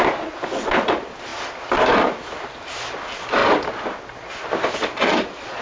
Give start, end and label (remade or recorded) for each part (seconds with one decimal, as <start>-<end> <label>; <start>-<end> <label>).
0.0-5.6 recorded